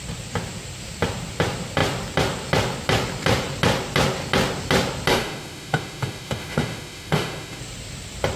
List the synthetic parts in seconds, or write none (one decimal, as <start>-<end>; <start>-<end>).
5.1-7.6